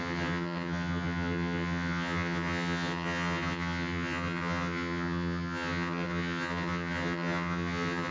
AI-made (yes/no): yes